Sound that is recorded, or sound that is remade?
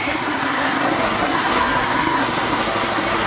remade